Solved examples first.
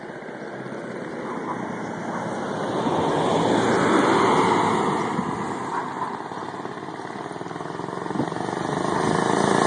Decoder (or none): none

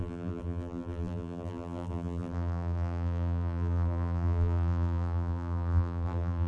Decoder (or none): vocoder, BigVGAN v2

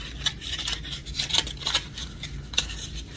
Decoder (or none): vocoder, BigVGAN v2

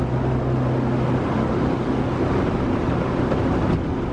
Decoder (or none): none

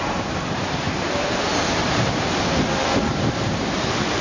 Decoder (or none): vocoder, BigVGAN v2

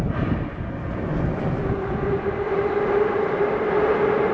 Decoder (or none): vocoder, BigVGAN v2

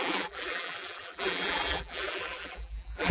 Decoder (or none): vocoder, BigVGAN v2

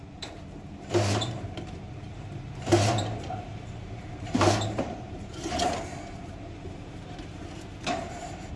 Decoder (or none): vocoder, BigVGAN v2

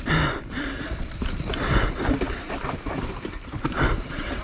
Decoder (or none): vocoder, BigVGAN v2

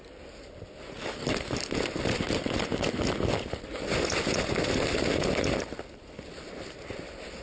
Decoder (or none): none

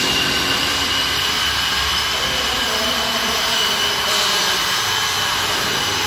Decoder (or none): vocoder, BigVGAN v2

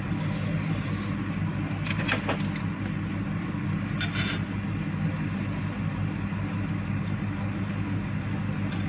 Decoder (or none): none